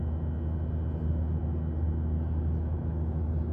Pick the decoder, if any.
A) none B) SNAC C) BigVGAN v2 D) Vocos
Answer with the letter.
A